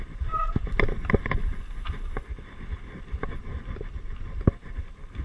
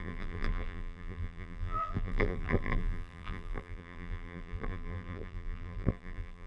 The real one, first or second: first